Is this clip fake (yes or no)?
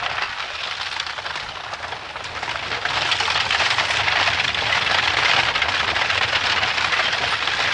no